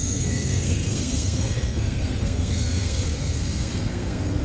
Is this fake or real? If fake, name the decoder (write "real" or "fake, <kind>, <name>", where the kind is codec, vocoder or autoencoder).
fake, codec, SNAC